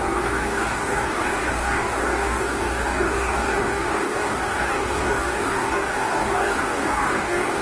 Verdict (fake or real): fake